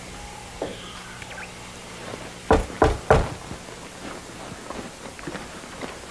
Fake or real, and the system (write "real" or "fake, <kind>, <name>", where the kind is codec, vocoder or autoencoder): real